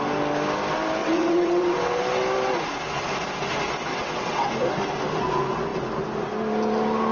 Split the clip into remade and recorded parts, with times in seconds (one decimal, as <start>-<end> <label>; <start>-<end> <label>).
0.0-1.0 recorded; 1.0-2.0 remade; 2.0-3.9 recorded; 3.9-4.5 remade; 4.5-7.1 recorded